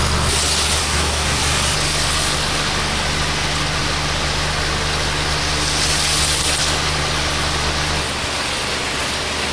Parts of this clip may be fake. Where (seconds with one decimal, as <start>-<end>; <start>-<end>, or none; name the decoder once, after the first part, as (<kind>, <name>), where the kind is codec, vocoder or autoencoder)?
0.8-1.4 (codec, DAC)